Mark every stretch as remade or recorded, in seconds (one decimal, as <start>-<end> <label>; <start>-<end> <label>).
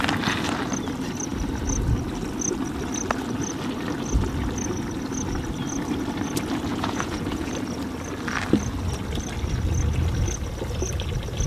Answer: 0.0-6.7 recorded; 6.7-7.5 remade; 7.5-11.5 recorded